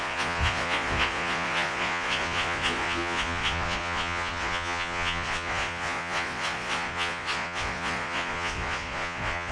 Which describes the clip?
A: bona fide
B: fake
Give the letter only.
B